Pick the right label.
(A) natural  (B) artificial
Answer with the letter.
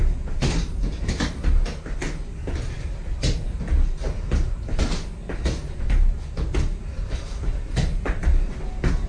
A